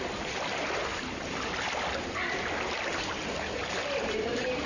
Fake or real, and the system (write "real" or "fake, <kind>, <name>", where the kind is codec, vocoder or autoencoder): real